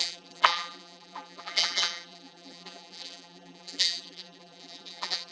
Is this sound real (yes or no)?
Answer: no